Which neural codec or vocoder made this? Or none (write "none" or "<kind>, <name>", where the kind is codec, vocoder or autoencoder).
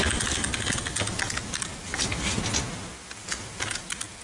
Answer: none